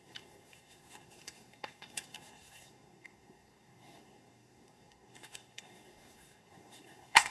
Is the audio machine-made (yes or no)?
yes